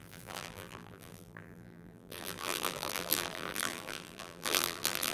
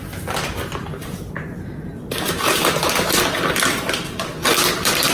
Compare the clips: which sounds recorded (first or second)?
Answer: second